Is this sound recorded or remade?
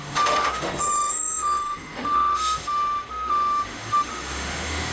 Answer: remade